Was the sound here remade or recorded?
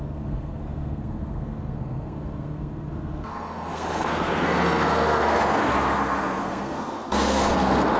remade